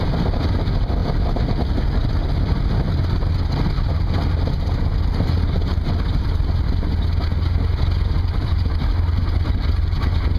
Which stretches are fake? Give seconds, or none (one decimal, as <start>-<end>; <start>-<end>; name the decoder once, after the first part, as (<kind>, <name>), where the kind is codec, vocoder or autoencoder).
none